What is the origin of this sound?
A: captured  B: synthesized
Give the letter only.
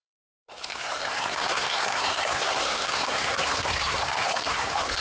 B